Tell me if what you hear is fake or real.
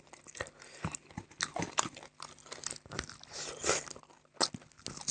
real